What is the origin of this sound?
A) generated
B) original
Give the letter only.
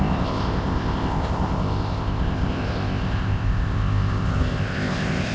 A